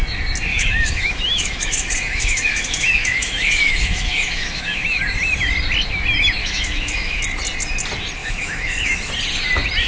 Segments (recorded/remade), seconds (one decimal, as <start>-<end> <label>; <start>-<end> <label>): 0.0-0.5 recorded; 0.5-5.0 remade; 5.0-6.4 recorded; 6.4-7.2 remade; 7.2-8.2 recorded; 8.2-9.1 remade; 9.1-9.9 recorded